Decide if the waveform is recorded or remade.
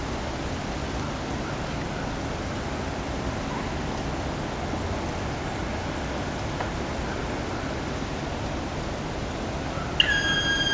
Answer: recorded